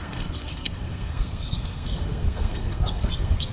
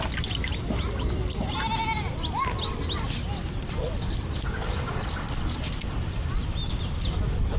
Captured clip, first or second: second